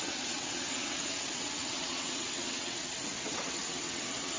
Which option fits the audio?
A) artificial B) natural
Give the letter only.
A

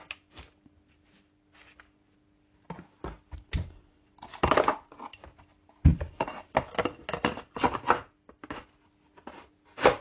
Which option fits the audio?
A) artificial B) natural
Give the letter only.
B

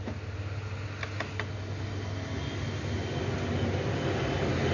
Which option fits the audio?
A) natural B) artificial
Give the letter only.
A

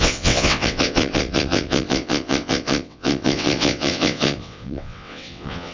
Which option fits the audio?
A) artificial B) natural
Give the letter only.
A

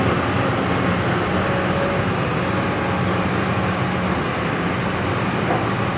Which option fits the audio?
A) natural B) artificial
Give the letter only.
A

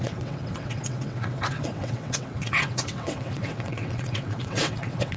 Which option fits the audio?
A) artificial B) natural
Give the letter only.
A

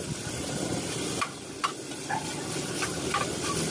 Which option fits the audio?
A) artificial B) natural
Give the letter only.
B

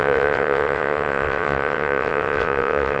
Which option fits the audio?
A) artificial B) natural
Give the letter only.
A